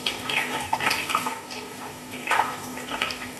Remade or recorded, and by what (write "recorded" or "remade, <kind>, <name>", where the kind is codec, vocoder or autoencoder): remade, codec, DAC